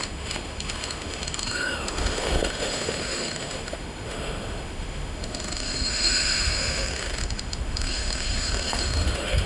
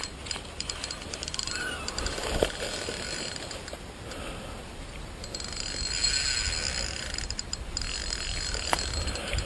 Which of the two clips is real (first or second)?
second